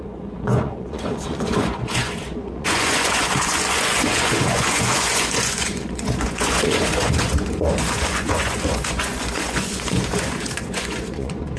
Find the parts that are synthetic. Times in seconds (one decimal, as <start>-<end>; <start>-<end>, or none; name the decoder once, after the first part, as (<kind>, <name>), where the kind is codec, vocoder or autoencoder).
0.0-11.6 (vocoder, Vocos)